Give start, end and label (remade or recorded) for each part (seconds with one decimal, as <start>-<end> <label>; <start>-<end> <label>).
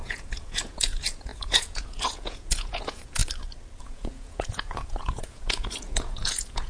0.0-3.2 remade; 3.2-3.8 recorded; 3.8-6.7 remade